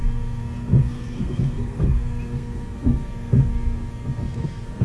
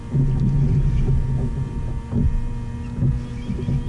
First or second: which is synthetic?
first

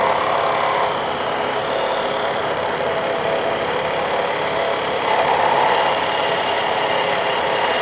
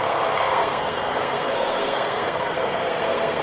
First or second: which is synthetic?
second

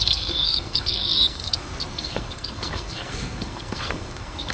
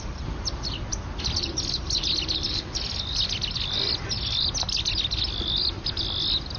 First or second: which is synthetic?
first